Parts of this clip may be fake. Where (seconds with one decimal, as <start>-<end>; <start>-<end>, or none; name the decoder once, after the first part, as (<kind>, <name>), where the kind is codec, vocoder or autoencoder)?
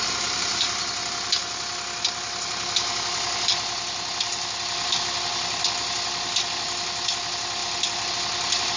none